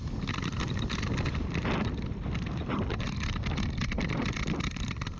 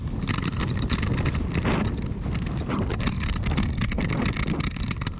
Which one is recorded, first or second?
second